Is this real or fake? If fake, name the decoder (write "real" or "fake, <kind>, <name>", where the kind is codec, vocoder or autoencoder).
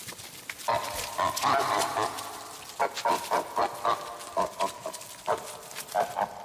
real